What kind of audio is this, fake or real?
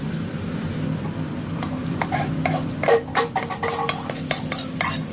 fake